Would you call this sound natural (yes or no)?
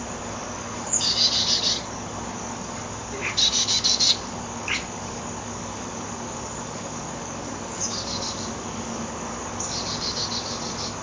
no